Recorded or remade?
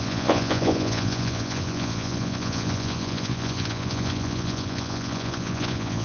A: remade